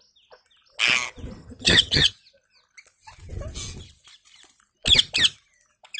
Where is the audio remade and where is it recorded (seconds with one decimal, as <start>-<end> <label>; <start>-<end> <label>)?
0.0-1.4 recorded; 1.4-2.1 remade; 2.1-6.0 recorded